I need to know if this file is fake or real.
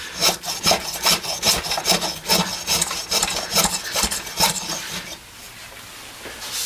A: real